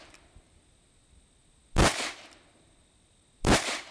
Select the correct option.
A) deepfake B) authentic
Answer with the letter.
B